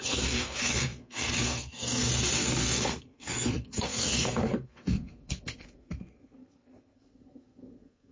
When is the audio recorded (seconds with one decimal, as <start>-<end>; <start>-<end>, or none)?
none